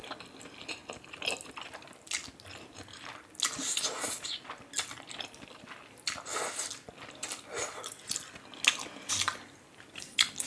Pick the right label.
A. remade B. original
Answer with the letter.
B